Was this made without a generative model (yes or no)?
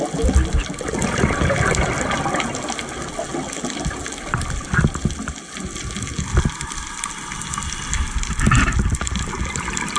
yes